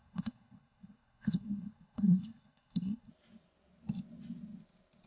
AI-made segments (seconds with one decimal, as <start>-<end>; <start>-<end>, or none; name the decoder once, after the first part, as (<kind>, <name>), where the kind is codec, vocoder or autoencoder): 0.0-3.1 (codec, SNAC)